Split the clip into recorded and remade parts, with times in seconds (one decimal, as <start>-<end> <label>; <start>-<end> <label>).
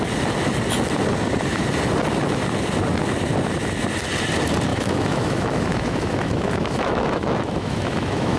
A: 0.0-4.7 recorded; 4.7-8.4 remade